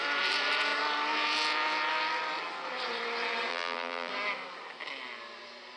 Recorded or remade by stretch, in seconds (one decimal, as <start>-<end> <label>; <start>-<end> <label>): 0.0-3.5 recorded; 3.5-4.1 remade; 4.1-5.8 recorded